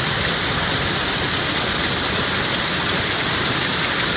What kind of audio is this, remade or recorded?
recorded